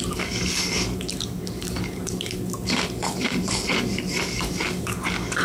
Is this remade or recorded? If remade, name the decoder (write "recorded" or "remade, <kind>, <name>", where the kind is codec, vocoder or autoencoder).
remade, codec, DAC